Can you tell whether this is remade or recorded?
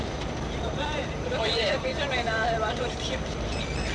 remade